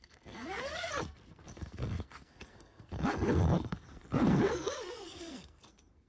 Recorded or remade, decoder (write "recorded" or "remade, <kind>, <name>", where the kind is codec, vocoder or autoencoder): remade, codec, SNAC